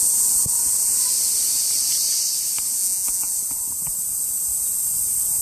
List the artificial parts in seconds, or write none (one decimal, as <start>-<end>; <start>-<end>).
2.8-3.3